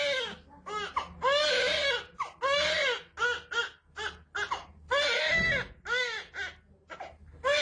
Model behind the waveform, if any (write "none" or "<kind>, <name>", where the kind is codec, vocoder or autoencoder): none